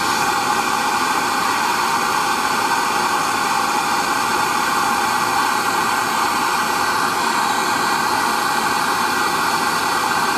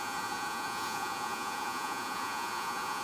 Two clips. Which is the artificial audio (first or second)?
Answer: second